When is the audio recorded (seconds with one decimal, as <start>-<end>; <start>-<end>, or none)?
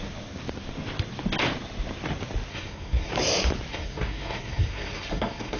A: 0.0-2.5; 3.1-3.7